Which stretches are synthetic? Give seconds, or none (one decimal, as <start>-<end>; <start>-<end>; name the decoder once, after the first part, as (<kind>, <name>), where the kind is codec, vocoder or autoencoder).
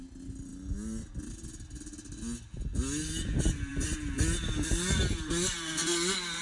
none